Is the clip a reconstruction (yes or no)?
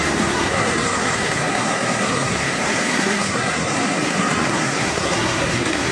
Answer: yes